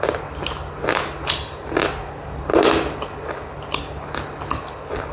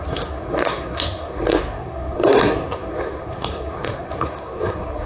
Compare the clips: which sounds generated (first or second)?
second